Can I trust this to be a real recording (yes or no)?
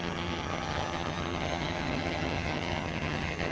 no